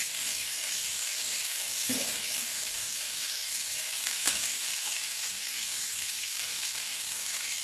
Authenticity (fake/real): fake